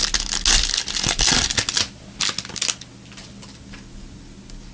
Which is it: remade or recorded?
recorded